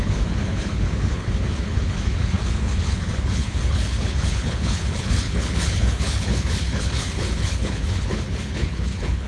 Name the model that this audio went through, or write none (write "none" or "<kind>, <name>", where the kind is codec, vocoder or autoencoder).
codec, HILCodec